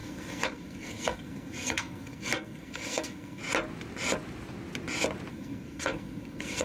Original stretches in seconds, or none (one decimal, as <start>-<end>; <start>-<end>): 3.4-5.3